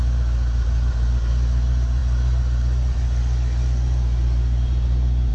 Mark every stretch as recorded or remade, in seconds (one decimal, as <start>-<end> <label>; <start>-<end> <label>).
0.0-5.3 recorded